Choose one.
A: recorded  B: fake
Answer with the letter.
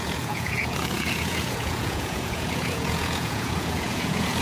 B